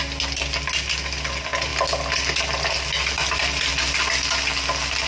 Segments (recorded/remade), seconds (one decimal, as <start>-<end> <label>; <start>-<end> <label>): 0.0-5.1 recorded